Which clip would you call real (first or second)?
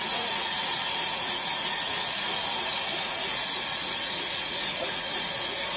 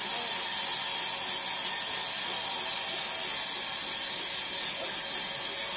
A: second